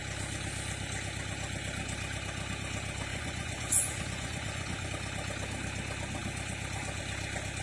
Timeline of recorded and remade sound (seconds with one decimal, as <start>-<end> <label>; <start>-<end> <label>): 0.0-3.1 recorded; 3.1-4.9 remade; 4.9-7.6 recorded